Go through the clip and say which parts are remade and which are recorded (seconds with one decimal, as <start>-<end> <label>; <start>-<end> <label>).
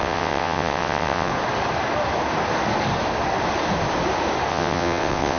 0.0-1.3 remade; 1.3-4.5 recorded; 4.5-5.4 remade